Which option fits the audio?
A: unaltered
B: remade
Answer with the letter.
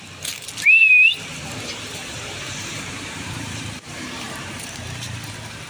B